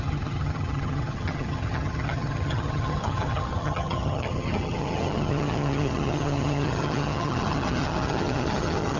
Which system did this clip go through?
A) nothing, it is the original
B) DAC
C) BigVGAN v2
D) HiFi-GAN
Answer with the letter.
D